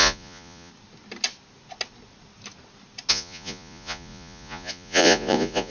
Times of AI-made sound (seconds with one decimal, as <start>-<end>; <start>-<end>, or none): 0.0-0.7; 3.1-5.7